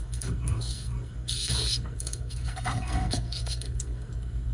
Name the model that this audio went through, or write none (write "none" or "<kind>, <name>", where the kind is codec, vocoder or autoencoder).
codec, SNAC